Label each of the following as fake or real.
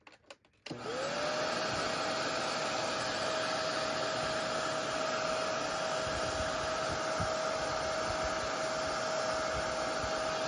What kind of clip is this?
real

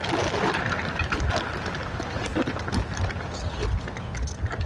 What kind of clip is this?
real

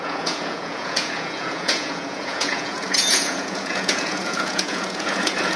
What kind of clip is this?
fake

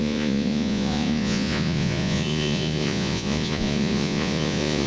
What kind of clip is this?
fake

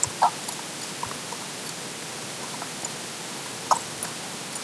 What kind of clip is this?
real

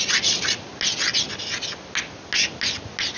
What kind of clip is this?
real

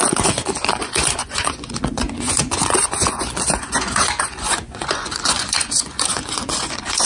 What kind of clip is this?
fake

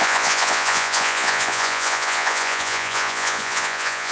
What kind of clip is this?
fake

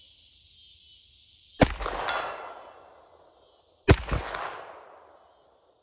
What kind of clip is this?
real